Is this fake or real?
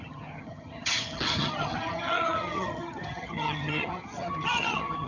fake